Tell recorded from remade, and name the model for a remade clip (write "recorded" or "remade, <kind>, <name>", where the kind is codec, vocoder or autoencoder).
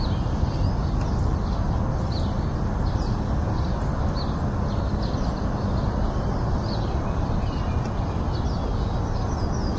recorded